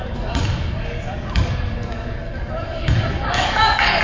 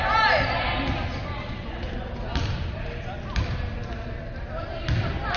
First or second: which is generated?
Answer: first